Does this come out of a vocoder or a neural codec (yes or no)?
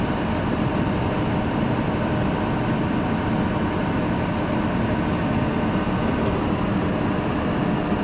no